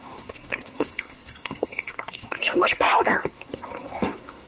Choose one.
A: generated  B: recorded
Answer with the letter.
A